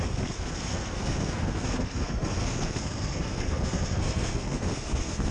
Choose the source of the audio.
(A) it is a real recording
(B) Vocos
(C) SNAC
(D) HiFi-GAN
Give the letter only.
C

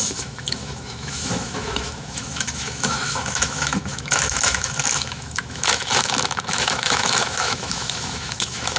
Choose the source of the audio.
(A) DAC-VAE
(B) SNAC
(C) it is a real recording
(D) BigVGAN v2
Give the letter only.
A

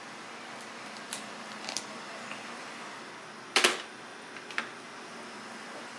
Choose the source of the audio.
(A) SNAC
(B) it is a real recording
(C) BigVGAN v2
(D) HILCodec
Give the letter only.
B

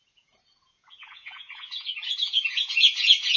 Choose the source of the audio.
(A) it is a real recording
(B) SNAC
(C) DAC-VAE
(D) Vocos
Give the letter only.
D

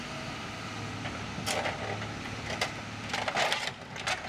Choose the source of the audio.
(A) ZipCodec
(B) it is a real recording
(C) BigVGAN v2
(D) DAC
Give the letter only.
B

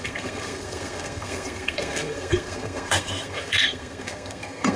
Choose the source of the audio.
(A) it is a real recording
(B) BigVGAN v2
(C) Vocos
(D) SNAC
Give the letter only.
D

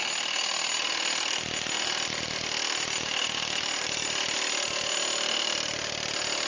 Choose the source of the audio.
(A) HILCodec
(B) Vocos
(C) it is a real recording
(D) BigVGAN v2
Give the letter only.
C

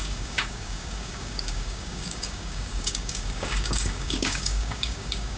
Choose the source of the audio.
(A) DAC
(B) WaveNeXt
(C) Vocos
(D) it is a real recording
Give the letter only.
A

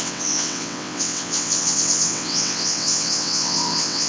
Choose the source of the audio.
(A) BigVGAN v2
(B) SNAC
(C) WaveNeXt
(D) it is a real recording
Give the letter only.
C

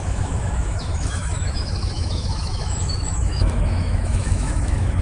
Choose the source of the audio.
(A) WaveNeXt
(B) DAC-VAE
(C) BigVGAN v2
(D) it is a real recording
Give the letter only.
B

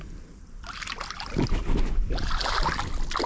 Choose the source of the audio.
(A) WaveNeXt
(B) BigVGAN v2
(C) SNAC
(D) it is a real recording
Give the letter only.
D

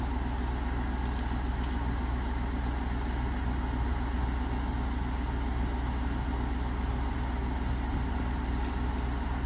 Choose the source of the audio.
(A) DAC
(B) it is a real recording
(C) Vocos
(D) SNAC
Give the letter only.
B